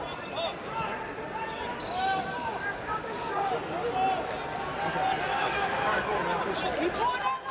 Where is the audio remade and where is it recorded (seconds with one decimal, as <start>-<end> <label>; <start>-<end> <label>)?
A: 0.0-1.7 recorded; 1.7-3.6 remade; 3.6-5.3 recorded; 5.3-6.0 remade; 6.0-7.5 recorded